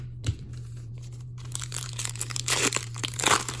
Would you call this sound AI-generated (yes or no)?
yes